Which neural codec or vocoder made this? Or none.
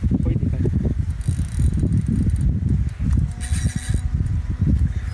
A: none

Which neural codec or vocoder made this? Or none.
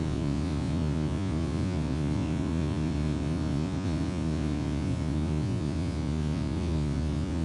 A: vocoder, Vocos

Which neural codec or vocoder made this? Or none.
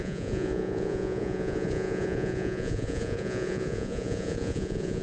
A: vocoder, Vocos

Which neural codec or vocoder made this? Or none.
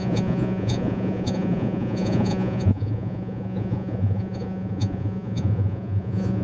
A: vocoder, Vocos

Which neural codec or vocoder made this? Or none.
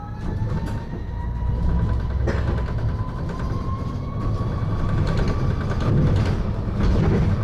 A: none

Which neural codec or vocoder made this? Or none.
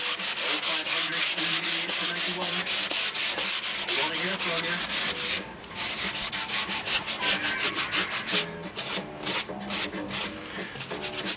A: none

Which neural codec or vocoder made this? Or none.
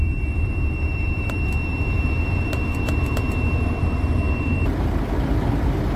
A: vocoder, BigVGAN v2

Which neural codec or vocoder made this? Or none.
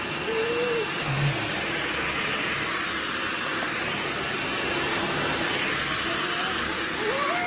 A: none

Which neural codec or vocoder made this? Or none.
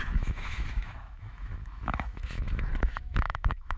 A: autoencoder, DAC-VAE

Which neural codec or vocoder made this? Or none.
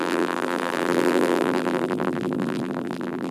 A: vocoder, BigVGAN v2